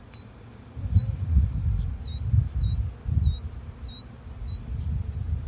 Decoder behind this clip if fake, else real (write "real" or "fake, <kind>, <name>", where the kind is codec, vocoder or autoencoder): real